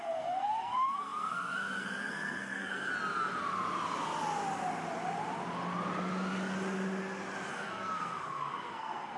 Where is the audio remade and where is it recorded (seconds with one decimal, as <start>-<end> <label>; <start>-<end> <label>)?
0.0-2.9 remade; 2.9-7.5 recorded; 7.5-9.2 remade